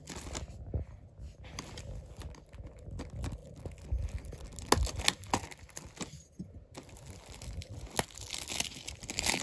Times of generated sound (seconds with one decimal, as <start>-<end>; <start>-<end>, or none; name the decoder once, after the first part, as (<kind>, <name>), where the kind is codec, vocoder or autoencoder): none